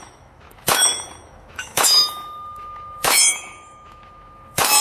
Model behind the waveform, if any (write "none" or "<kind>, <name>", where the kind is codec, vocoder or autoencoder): autoencoder, DAC-VAE